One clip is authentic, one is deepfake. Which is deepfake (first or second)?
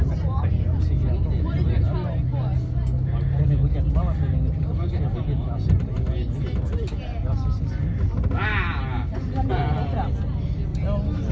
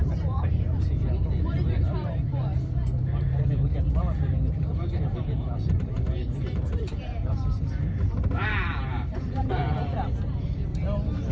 second